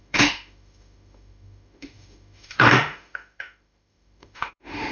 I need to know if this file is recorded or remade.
remade